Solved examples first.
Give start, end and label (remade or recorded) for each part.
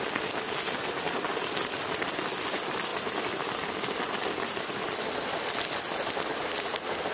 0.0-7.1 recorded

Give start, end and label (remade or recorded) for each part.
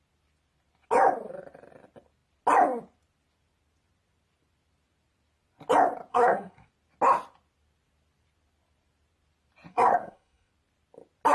0.0-6.1 recorded; 6.1-6.7 remade; 6.7-9.7 recorded; 9.7-10.5 remade; 10.5-11.3 recorded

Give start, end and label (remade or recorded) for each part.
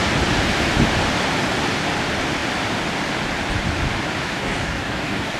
0.0-4.4 recorded; 4.4-5.4 remade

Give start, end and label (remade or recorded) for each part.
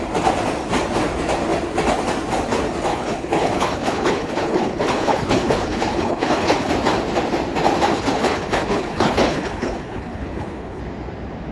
0.0-2.9 recorded; 2.9-6.7 remade; 6.7-7.9 recorded; 7.9-10.8 remade; 10.8-11.5 recorded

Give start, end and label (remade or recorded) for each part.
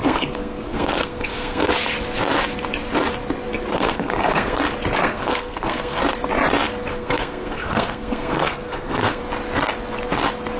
0.0-1.7 remade; 1.7-3.7 recorded; 3.7-4.6 remade; 4.6-5.0 recorded; 5.0-6.0 remade; 6.0-6.9 recorded; 6.9-9.2 remade; 9.2-10.6 recorded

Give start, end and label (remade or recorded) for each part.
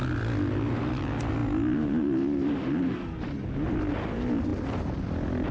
0.0-5.5 recorded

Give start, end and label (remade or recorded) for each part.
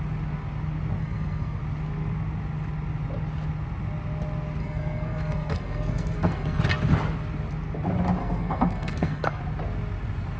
0.0-1.0 recorded; 1.0-1.6 remade; 1.6-4.6 recorded; 4.6-6.6 remade; 6.6-8.2 recorded; 8.2-9.4 remade; 9.4-10.4 recorded